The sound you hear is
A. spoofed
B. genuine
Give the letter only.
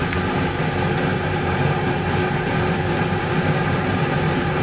A